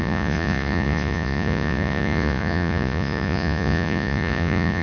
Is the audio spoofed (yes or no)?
yes